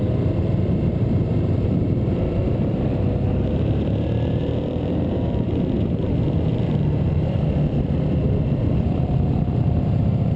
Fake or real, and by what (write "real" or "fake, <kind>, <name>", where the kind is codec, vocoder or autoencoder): fake, vocoder, BigVGAN v2